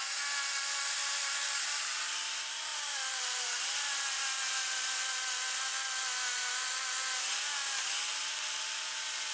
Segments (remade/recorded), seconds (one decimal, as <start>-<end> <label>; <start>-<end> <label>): 0.0-1.0 recorded; 1.0-2.0 remade; 2.0-2.7 recorded; 2.7-3.6 remade; 3.6-9.3 recorded